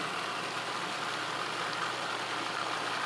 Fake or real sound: real